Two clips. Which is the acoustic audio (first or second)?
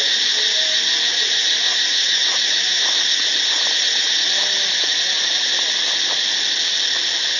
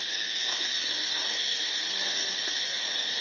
first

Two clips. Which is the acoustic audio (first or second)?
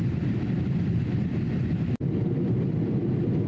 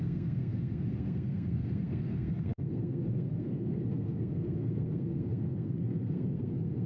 first